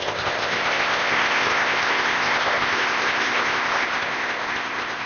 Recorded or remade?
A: remade